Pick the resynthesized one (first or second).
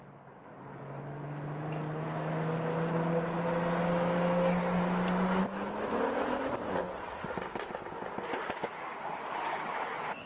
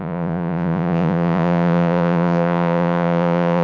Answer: second